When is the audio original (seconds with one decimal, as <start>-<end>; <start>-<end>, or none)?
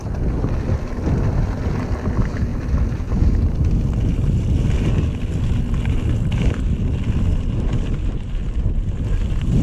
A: 0.0-9.6